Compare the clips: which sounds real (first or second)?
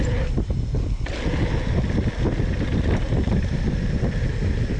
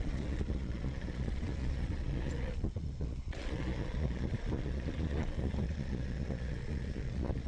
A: first